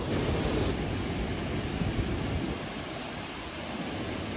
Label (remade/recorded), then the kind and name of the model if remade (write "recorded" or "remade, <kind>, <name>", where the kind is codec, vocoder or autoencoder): recorded